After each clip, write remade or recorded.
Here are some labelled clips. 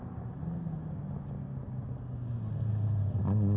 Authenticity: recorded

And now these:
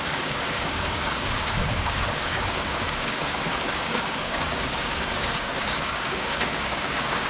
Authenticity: remade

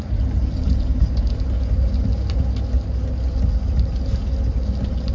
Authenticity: recorded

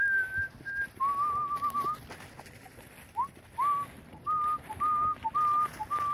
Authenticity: recorded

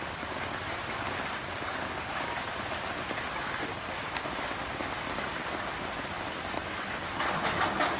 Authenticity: recorded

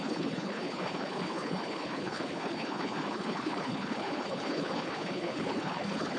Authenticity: remade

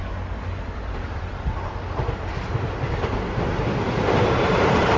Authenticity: recorded